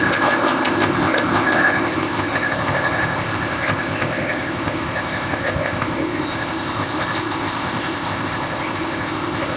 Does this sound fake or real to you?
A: fake